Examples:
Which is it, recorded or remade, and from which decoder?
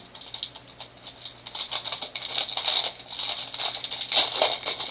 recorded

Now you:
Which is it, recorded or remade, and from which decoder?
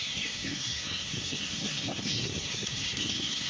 remade, codec, SNAC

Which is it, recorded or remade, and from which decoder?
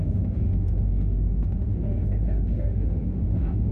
remade, autoencoder, DAC-VAE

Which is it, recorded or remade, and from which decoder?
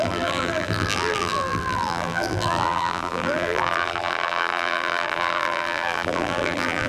remade, vocoder, BigVGAN v2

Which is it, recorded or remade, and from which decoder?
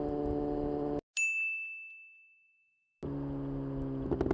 recorded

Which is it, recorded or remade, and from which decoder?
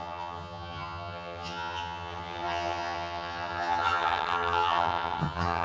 remade, vocoder, HiFi-GAN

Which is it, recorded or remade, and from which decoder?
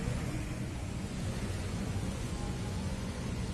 remade, vocoder, Vocos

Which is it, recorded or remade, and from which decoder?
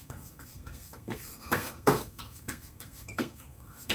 remade, codec, SNAC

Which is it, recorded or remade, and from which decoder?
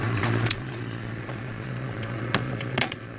remade, vocoder, Vocos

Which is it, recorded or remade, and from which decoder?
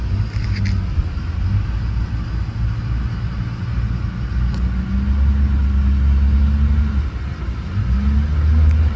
recorded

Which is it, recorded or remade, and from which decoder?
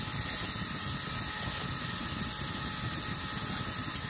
recorded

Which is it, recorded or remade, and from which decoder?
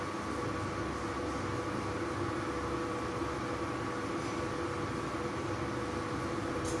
recorded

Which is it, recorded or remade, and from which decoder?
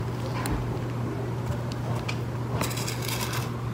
recorded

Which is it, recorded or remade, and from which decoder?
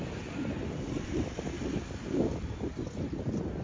recorded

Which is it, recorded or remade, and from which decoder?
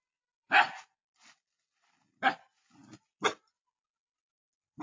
recorded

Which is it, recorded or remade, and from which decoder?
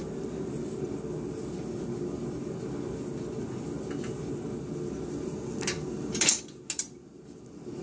recorded